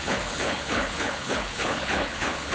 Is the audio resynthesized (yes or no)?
yes